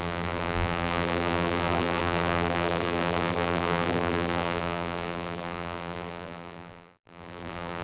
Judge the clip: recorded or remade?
remade